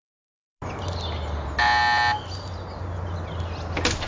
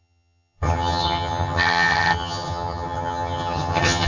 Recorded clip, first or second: first